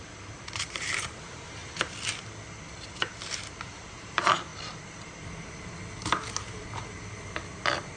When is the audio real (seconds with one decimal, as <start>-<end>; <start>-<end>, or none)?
1.6-3.5; 4.5-6.0